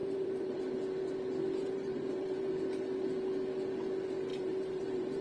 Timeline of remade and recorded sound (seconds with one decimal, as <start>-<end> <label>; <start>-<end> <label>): 0.0-0.7 remade; 0.7-1.6 recorded; 1.6-2.5 remade; 2.5-4.3 recorded; 4.3-5.2 remade